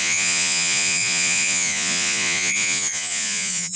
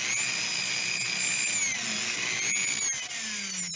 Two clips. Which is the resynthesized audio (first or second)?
first